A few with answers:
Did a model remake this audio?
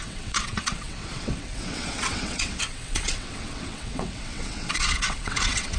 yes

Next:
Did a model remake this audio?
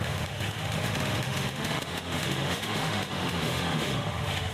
yes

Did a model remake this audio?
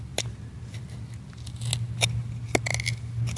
no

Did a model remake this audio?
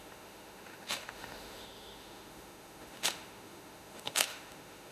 yes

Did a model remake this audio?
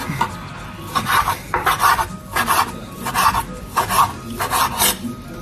no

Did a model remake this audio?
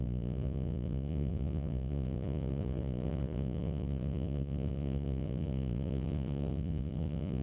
yes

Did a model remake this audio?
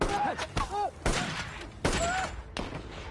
no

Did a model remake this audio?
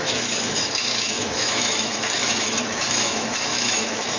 yes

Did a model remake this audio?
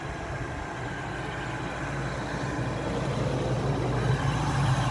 no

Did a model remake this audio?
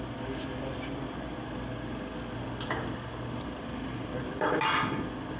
no